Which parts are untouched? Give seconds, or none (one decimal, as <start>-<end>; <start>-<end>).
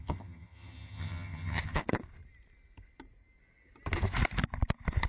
1.8-5.1